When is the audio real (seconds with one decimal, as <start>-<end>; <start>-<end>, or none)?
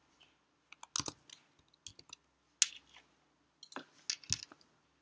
0.0-5.0